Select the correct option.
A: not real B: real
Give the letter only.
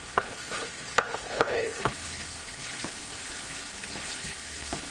A